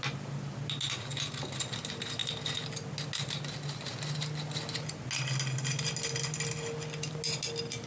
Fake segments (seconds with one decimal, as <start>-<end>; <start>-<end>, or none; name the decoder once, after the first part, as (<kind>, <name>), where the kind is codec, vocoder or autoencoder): none